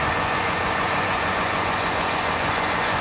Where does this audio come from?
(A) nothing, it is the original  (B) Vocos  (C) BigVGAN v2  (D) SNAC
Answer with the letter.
B